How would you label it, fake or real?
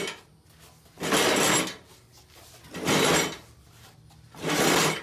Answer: real